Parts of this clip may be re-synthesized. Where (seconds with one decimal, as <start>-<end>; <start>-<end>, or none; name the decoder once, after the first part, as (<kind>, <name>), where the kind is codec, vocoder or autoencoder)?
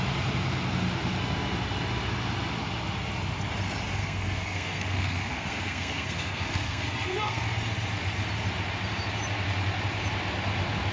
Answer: 4.0-7.4 (codec, SNAC)